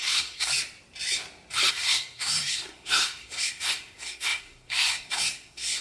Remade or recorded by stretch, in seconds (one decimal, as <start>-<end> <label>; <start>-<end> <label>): 0.0-0.5 remade; 0.5-1.7 recorded; 1.7-5.8 remade